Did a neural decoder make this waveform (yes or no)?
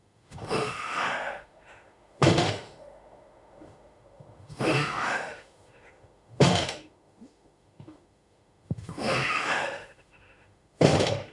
yes